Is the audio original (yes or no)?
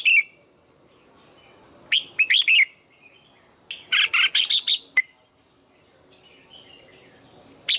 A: yes